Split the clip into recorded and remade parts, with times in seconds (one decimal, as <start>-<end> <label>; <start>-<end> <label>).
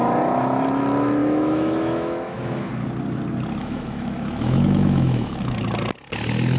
0.0-1.2 recorded; 1.2-2.7 remade; 2.7-3.6 recorded; 3.6-5.6 remade; 5.6-6.6 recorded